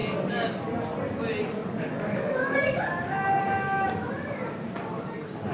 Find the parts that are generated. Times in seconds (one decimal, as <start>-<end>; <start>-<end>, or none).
0.0-0.5; 1.6-3.4